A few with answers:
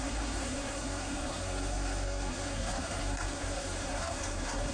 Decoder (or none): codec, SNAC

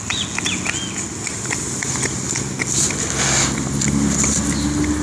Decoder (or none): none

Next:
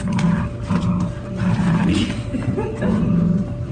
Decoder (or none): none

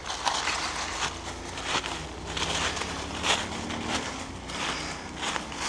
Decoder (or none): none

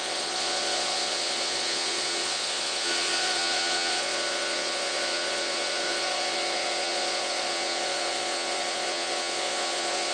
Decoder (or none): vocoder, Vocos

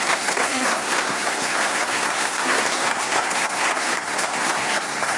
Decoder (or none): codec, SNAC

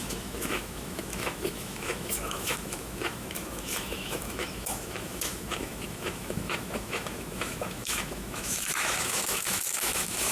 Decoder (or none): autoencoder, DAC-VAE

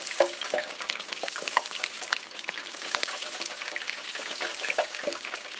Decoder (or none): codec, DAC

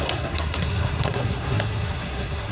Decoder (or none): codec, SNAC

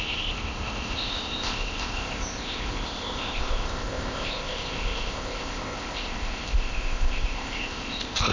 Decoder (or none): codec, ZipCodec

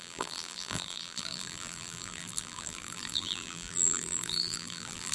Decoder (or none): vocoder, BigVGAN v2